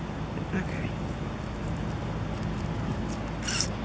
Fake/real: real